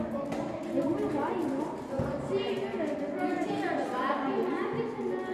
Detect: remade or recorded recorded